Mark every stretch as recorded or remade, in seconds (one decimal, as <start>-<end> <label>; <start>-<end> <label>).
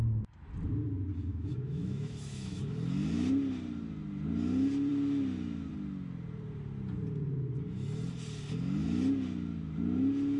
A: 0.0-1.3 recorded; 1.3-2.7 remade; 2.7-10.4 recorded